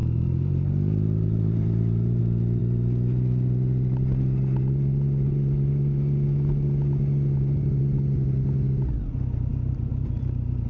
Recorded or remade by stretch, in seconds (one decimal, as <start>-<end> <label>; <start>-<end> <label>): 0.0-2.2 remade; 2.2-10.7 recorded